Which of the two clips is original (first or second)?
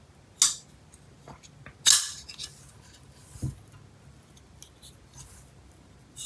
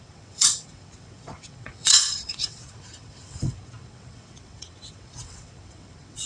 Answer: first